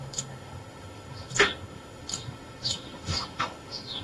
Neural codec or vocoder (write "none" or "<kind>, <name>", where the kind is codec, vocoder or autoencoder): autoencoder, DAC-VAE